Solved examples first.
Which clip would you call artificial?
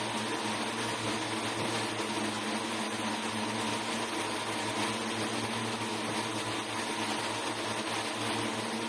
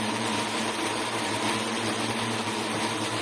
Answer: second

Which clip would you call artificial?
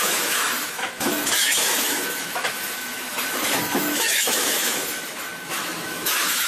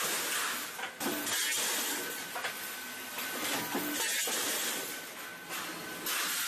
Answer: first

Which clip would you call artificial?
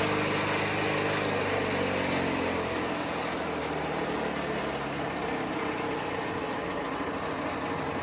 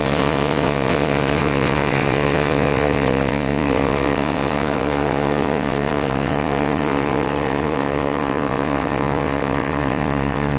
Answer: second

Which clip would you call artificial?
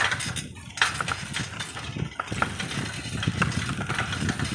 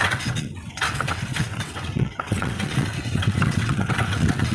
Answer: second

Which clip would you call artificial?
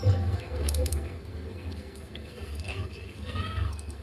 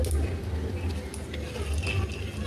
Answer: first